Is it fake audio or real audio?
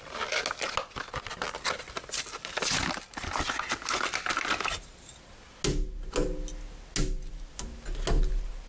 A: real